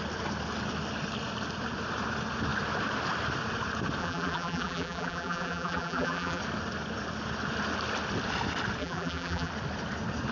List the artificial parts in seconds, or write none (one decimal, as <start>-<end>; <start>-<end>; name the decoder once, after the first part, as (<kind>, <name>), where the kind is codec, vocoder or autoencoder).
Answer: 4.0-6.4 (vocoder, BigVGAN v2); 8.8-9.5